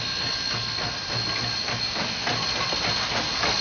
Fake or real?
real